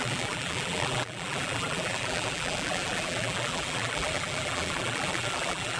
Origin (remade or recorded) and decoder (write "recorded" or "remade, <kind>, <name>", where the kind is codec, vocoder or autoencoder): remade, vocoder, BigVGAN v2